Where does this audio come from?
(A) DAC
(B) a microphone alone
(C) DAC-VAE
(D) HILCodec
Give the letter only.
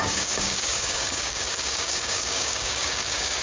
A